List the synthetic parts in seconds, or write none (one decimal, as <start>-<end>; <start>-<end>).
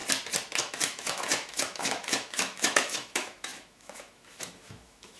0.6-5.2